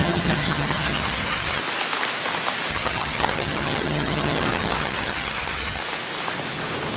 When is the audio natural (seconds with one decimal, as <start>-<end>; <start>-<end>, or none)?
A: 1.6-2.7; 5.8-7.0